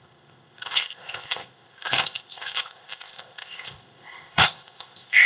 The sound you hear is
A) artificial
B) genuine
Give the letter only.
A